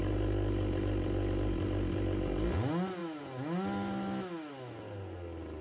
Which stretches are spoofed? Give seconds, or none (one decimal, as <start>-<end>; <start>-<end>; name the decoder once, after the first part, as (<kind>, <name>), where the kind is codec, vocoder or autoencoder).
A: none